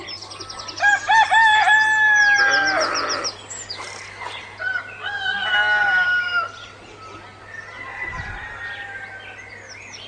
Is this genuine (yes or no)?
yes